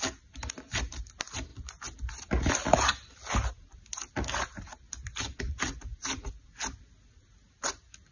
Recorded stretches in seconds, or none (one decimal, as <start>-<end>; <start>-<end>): 0.0-8.1